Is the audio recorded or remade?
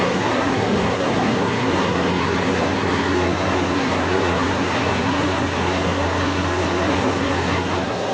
remade